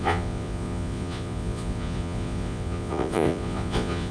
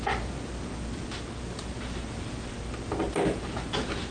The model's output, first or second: first